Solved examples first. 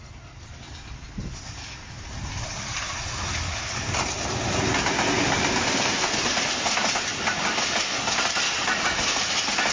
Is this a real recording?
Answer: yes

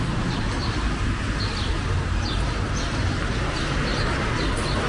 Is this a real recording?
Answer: yes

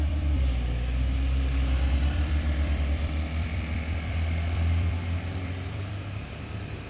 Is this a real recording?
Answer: no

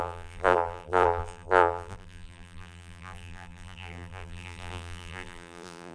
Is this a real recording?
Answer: no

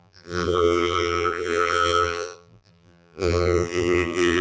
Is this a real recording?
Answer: no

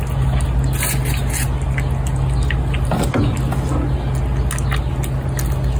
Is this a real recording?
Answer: yes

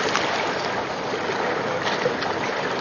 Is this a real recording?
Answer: yes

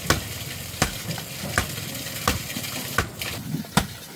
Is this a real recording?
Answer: yes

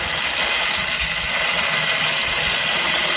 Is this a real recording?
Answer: yes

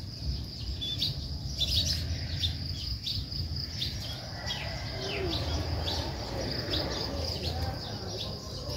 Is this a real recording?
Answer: yes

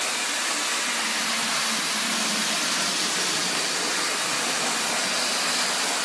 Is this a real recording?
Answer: yes